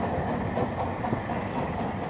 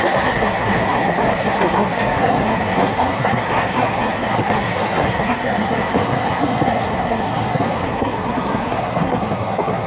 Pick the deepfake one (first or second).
second